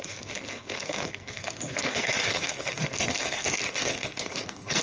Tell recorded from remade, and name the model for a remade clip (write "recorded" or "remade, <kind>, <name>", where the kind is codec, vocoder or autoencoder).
remade, codec, SNAC